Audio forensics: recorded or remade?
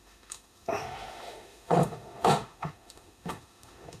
remade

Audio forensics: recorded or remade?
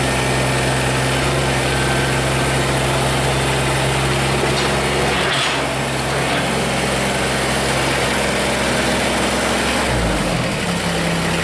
recorded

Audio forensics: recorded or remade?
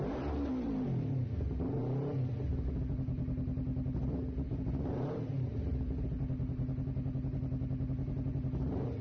recorded